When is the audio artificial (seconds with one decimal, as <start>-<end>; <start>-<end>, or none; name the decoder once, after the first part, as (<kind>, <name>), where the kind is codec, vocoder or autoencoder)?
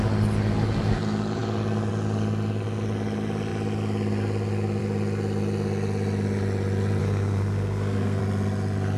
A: 7.0-8.2 (codec, SNAC)